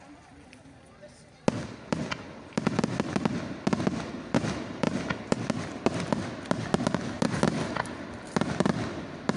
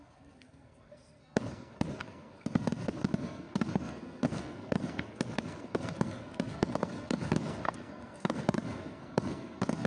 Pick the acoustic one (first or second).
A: first